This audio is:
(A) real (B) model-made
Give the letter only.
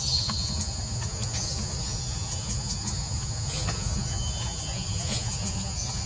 B